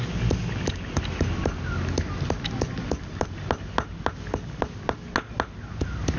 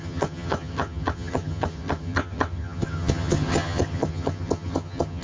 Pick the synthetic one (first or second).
second